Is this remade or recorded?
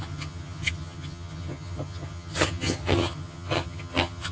remade